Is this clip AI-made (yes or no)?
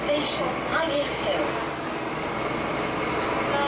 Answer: no